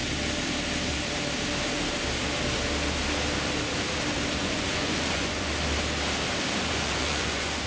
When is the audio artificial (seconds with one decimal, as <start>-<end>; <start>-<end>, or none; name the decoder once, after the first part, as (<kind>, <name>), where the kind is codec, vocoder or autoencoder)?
4.4-5.5 (vocoder, Vocos); 6.7-7.7